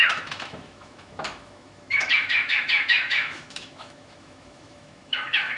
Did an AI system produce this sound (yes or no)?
yes